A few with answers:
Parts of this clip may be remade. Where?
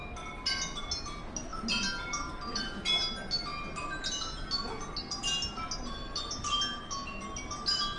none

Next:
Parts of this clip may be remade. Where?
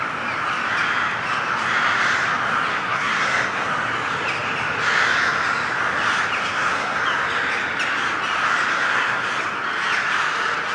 2.7-3.7 (codec, SNAC); 6.4-7.0; 8.7-9.3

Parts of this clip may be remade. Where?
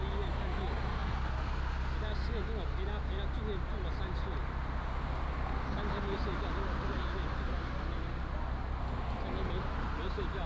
none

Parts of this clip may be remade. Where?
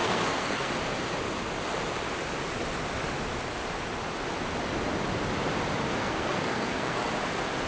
0.0-0.7 (codec, SNAC); 5.9-7.1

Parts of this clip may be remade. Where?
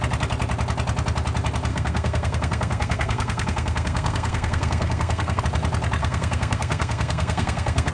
1.7-5.4 (codec, SNAC); 6.0-7.9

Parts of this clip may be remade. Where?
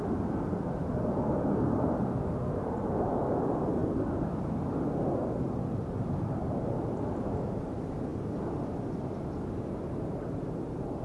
none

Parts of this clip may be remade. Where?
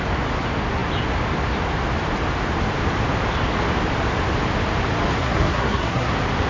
5.2-6.1 (codec, SNAC)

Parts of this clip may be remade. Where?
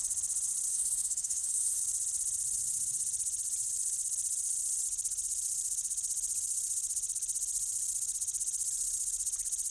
0.7-1.8 (codec, SNAC)